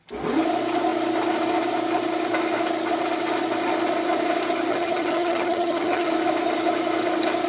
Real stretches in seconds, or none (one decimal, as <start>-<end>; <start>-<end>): 0.0-4.7; 6.1-7.5